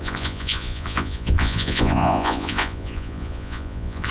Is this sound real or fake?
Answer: fake